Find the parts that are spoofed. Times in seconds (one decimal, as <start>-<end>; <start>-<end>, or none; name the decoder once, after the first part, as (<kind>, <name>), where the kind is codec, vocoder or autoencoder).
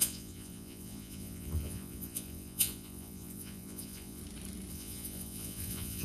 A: 0.0-4.2 (vocoder, Vocos); 4.7-6.0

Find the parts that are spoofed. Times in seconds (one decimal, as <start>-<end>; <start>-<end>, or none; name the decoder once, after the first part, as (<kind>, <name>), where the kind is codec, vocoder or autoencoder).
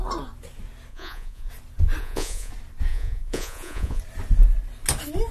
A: 0.9-1.5 (vocoder, Vocos); 2.0-2.5; 2.9-4.0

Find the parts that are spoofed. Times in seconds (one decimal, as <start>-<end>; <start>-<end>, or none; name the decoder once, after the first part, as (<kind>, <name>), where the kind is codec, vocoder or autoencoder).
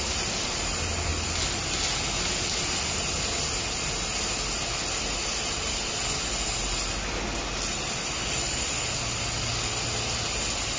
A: none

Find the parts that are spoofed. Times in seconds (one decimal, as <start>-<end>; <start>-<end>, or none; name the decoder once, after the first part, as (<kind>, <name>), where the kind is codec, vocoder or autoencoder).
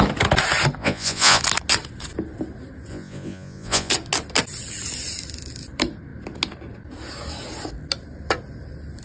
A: 0.8-1.4 (vocoder, Vocos); 2.9-3.9